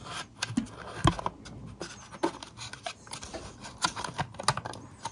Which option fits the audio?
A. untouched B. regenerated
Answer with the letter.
A